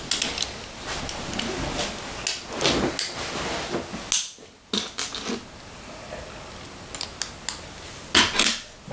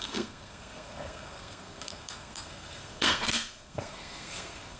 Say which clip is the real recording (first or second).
first